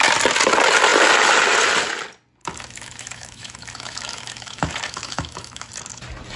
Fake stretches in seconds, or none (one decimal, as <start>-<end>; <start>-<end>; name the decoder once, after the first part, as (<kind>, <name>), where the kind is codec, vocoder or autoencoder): 2.4-5.7 (autoencoder, DAC-VAE)